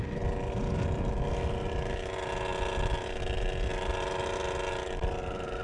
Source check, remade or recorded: recorded